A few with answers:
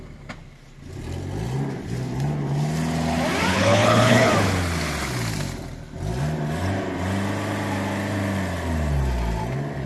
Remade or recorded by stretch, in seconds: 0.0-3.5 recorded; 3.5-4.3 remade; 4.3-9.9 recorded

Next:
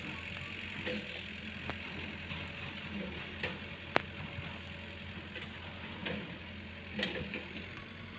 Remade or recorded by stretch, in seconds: 0.0-8.2 recorded

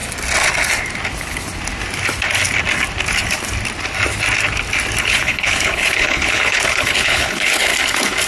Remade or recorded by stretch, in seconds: 0.0-5.0 recorded; 5.0-7.7 remade; 7.7-8.3 recorded